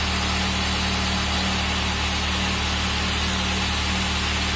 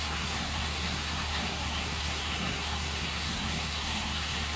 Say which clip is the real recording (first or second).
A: first